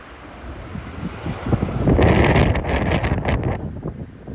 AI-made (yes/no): no